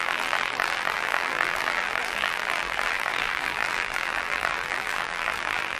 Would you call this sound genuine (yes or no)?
no